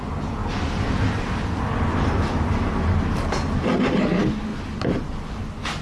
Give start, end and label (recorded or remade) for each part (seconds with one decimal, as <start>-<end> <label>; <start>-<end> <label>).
0.0-5.8 recorded